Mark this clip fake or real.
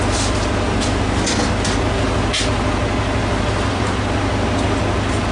real